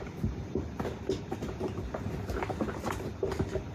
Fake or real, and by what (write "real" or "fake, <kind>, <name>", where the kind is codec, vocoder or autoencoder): real